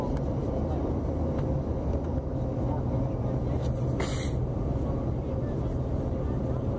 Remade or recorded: recorded